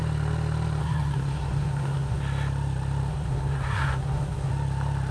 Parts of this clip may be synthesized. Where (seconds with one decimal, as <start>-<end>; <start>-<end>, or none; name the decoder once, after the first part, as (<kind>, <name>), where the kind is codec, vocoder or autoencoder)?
0.8-2.2 (codec, SNAC); 3.1-4.5